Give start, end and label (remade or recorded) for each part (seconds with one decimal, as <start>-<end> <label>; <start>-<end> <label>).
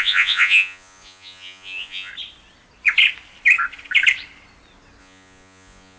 0.0-2.1 remade; 2.1-5.0 recorded; 5.0-6.0 remade